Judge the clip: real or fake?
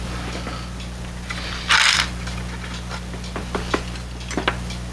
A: real